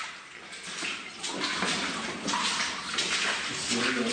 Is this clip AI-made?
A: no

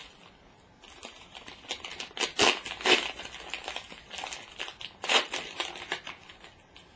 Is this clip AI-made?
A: no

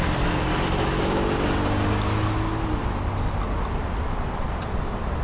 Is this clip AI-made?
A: no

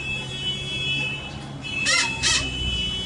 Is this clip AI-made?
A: yes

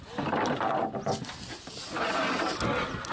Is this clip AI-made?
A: no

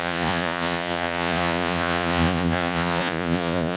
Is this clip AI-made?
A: yes